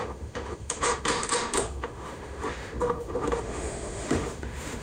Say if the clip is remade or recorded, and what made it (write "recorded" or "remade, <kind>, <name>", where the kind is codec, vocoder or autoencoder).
remade, autoencoder, DAC-VAE